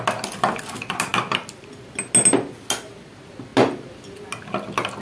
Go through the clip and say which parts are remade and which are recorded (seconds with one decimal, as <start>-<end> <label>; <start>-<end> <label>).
0.0-5.0 recorded